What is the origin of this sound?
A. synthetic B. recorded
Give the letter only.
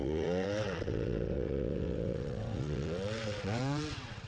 A